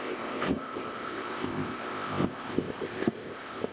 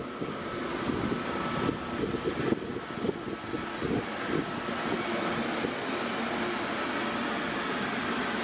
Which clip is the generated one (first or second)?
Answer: first